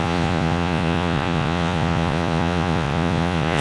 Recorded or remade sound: remade